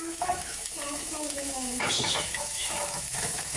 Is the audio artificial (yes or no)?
yes